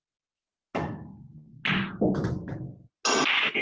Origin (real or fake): real